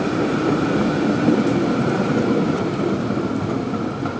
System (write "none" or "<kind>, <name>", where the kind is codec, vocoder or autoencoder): none